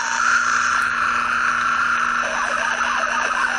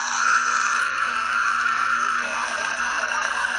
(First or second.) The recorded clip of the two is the first